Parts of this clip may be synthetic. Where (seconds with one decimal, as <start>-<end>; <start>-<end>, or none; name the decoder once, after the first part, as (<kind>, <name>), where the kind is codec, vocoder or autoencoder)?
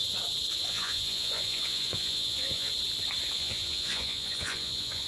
0.7-2.7 (vocoder, Vocos); 3.3-5.1